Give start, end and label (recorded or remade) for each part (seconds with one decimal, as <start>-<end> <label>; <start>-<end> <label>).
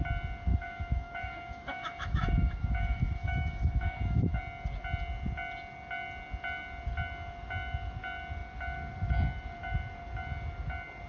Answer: 0.0-0.5 recorded; 0.5-4.4 remade; 4.4-11.1 recorded